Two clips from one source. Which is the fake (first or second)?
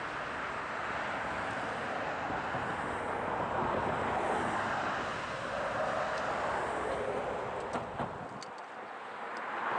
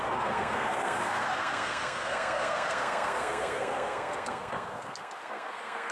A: second